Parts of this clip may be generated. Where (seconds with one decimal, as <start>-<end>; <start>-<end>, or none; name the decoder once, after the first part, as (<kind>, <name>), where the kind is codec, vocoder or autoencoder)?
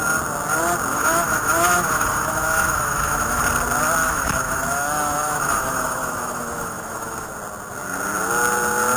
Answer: 0.9-3.4 (autoencoder, DAC-VAE); 4.0-7.3